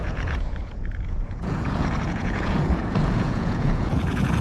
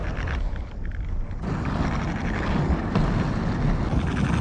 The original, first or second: second